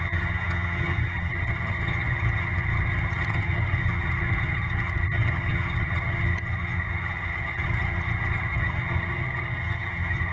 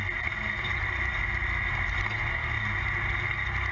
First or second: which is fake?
first